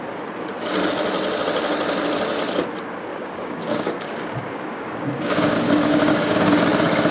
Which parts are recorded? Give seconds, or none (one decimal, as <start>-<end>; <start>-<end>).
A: 0.0-3.1; 6.6-7.1